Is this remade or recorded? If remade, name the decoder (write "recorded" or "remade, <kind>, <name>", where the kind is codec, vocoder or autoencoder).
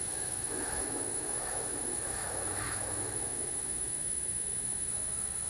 remade, autoencoder, DAC-VAE